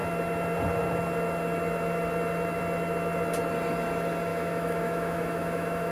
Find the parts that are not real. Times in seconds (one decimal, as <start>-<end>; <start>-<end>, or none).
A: 4.3-5.9